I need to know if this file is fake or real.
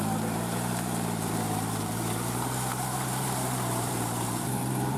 fake